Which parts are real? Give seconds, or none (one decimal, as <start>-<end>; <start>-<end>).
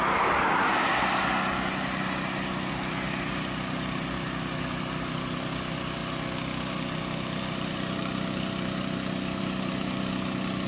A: 0.0-10.7